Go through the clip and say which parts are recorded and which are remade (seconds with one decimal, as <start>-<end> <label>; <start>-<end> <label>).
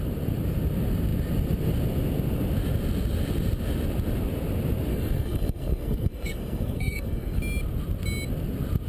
0.0-4.9 recorded; 4.9-7.4 remade; 7.4-8.9 recorded